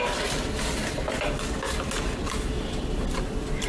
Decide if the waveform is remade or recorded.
recorded